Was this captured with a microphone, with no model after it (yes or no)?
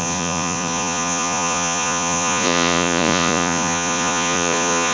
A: no